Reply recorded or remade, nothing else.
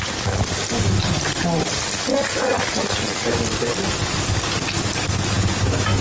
recorded